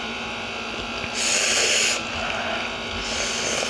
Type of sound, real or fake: real